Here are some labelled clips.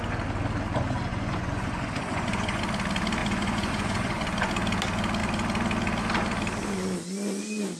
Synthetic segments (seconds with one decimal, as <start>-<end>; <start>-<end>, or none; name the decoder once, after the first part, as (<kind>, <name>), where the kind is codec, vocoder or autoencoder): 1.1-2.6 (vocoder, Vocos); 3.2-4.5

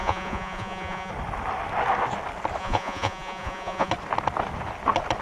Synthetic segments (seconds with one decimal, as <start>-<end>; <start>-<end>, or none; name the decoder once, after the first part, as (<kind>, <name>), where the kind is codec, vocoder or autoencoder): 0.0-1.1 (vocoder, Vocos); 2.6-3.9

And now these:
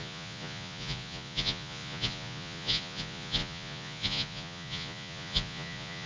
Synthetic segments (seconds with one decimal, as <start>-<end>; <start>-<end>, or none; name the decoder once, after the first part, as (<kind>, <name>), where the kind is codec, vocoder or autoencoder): 0.0-6.1 (vocoder, Vocos)

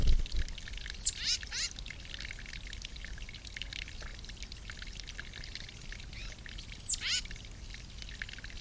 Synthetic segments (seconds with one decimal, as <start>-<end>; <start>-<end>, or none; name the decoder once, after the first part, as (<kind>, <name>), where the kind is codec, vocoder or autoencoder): none

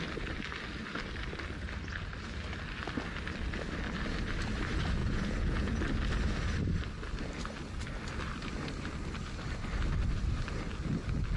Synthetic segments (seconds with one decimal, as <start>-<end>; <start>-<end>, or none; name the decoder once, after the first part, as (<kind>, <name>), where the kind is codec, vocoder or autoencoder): 5.0-5.8 (vocoder, Vocos)

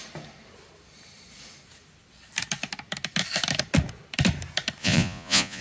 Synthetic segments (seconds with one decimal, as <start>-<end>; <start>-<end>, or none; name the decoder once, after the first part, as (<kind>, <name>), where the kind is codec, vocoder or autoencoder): 4.8-5.6 (vocoder, Vocos)